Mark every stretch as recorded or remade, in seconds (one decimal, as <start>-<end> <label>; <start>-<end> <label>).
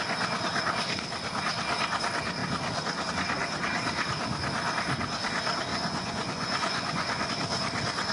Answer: 0.0-5.7 recorded; 5.7-7.3 remade; 7.3-8.1 recorded